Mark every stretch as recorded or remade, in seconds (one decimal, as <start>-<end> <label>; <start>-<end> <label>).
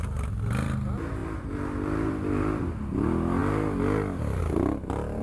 0.0-5.2 recorded